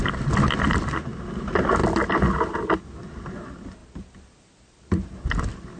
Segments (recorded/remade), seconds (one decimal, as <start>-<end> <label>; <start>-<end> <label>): 0.0-5.8 recorded